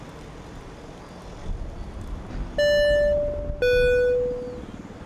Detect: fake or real real